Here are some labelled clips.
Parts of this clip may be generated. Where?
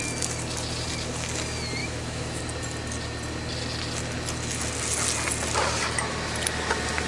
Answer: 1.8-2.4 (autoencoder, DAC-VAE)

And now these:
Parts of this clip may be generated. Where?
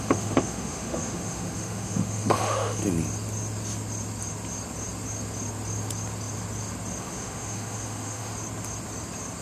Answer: 0.0-2.8 (autoencoder, DAC-VAE); 7.0-8.3